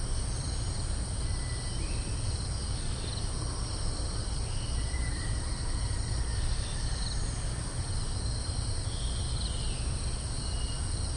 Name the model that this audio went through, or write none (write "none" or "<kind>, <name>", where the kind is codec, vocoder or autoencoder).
none